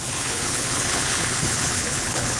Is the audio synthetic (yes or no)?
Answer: yes